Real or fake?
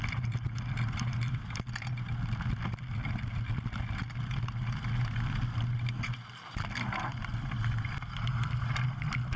real